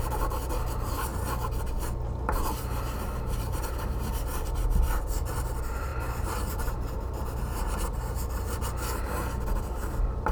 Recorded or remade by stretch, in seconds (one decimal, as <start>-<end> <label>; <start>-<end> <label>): 0.0-1.1 remade; 1.1-2.6 recorded; 2.6-10.3 remade